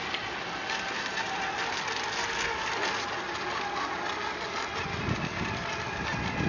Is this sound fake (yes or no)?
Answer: no